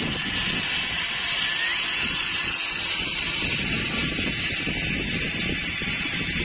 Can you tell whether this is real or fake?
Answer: real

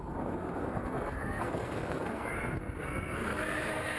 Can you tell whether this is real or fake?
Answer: fake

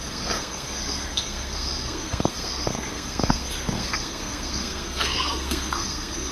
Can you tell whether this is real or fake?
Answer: fake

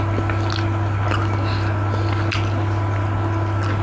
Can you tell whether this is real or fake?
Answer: real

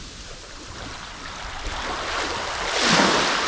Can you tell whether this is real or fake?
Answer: real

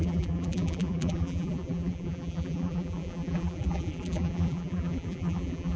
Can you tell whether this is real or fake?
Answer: fake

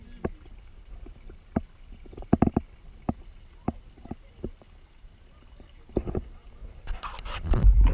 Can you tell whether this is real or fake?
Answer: real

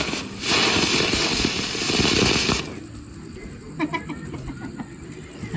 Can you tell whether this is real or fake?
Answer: real